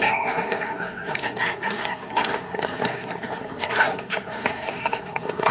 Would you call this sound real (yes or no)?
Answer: no